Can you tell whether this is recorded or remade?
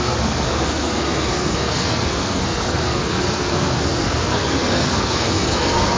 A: remade